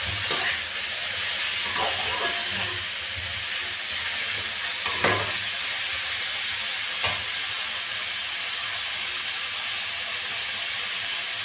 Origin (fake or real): real